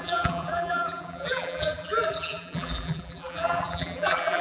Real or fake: fake